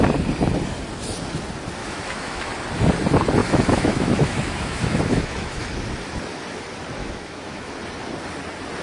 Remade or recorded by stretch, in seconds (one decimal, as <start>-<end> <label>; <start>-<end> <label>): 0.0-1.8 recorded; 1.8-2.5 remade; 2.5-3.4 recorded; 3.4-5.6 remade; 5.6-7.0 recorded; 7.0-7.7 remade; 7.7-8.8 recorded